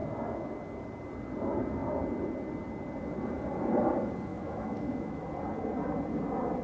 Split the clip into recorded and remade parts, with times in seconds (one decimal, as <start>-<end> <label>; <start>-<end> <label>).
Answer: 0.0-4.3 recorded; 4.3-5.3 remade; 5.3-6.6 recorded